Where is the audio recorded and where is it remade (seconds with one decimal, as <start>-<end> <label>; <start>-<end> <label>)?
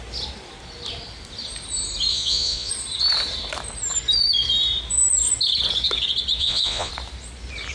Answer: 0.0-2.1 recorded; 2.1-2.7 remade; 2.7-6.4 recorded; 6.4-6.9 remade; 6.9-7.7 recorded